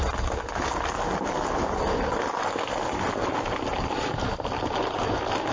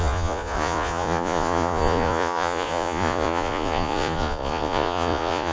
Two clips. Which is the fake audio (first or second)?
second